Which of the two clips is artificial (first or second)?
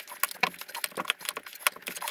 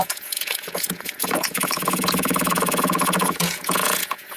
second